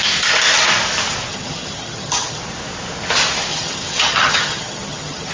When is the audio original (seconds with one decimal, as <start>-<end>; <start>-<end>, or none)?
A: 0.0-1.3; 2.4-3.5